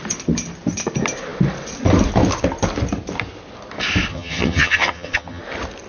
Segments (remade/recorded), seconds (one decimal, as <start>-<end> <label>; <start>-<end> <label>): 0.0-4.1 recorded; 4.1-5.4 remade; 5.4-5.9 recorded